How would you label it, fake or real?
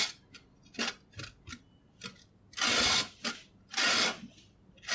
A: real